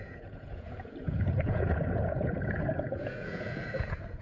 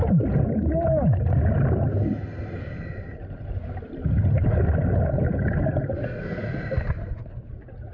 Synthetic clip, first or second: first